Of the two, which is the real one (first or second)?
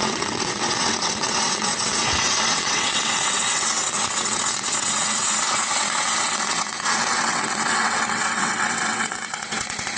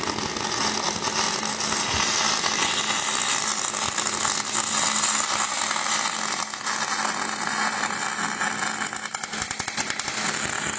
second